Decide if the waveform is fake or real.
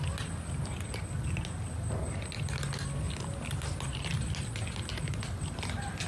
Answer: real